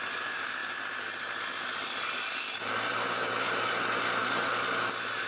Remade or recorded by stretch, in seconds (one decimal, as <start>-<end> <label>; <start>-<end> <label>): 0.0-5.3 recorded